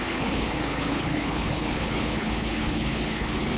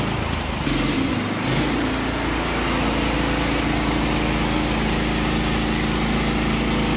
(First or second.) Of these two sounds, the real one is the second